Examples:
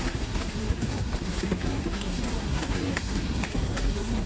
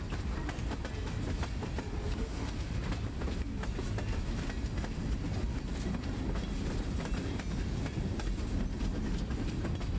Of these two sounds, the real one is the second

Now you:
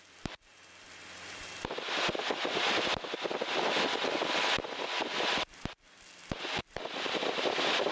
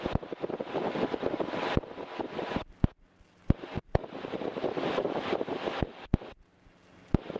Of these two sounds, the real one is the second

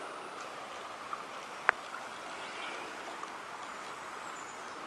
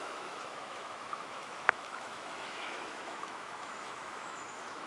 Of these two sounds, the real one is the first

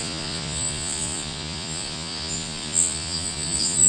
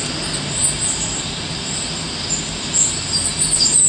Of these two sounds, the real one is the second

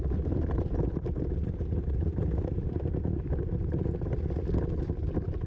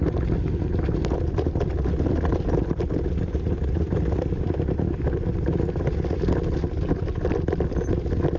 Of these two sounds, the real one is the second